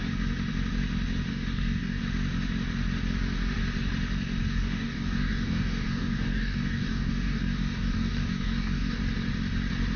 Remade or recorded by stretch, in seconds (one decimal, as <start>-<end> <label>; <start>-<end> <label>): 0.0-1.3 recorded; 1.3-2.0 remade; 2.0-4.4 recorded; 4.4-9.0 remade; 9.0-10.0 recorded